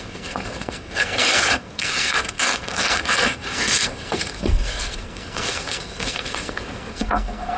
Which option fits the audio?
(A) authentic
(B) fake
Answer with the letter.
B